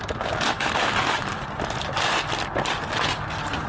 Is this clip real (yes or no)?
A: no